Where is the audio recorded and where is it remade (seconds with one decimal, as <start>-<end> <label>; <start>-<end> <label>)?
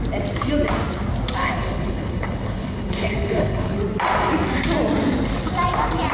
0.0-1.4 recorded; 1.4-3.8 remade; 3.8-6.1 recorded